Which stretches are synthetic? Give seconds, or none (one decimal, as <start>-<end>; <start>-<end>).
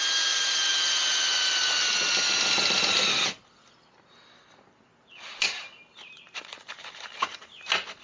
5.9-7.5